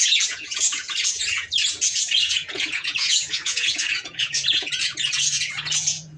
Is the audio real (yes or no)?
no